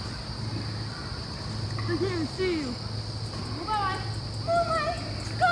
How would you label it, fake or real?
real